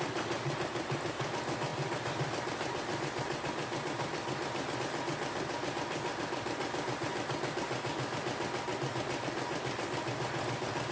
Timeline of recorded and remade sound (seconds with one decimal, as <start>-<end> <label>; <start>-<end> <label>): 0.0-10.9 recorded